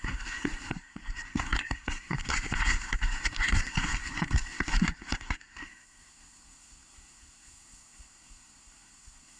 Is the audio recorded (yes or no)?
no